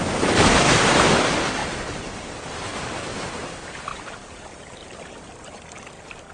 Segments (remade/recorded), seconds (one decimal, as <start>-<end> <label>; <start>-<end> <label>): 0.0-2.7 recorded; 2.7-5.1 remade; 5.1-6.3 recorded